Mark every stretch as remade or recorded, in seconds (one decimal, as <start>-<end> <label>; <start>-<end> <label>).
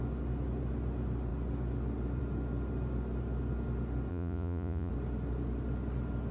0.0-4.1 recorded; 4.1-4.9 remade; 4.9-6.3 recorded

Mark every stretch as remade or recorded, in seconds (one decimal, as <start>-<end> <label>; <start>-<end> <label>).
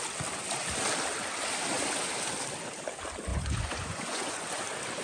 0.0-3.3 recorded; 3.3-4.6 remade; 4.6-5.0 recorded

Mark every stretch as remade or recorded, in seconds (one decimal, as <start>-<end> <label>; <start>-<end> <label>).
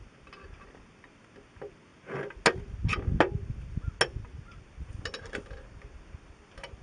0.0-6.8 recorded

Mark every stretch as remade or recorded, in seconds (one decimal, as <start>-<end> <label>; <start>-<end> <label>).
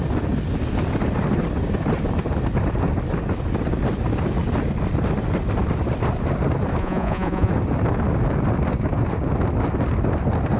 0.0-6.8 recorded; 6.8-7.5 remade; 7.5-10.6 recorded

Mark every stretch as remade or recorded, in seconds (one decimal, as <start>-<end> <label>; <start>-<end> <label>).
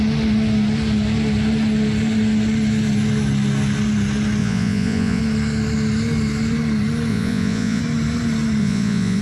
0.0-4.4 recorded; 4.4-5.2 remade; 5.2-7.1 recorded; 7.1-7.8 remade; 7.8-8.6 recorded; 8.6-9.2 remade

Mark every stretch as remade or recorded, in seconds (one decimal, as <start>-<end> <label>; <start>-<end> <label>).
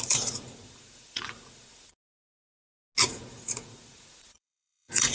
0.0-2.1 remade; 2.1-3.0 recorded; 3.0-5.1 remade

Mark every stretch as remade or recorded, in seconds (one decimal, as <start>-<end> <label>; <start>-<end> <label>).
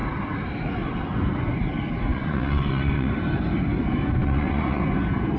0.0-2.1 recorded; 2.1-3.1 remade; 3.1-4.2 recorded; 4.2-4.8 remade; 4.8-5.4 recorded